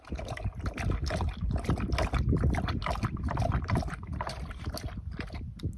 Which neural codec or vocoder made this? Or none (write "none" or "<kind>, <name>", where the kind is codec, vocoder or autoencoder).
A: none